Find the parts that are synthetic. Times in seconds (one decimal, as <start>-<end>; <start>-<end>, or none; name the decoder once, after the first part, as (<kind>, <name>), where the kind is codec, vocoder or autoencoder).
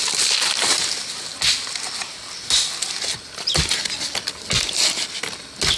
none